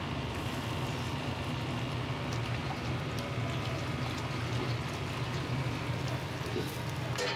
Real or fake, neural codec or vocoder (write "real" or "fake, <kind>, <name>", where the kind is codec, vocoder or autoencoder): real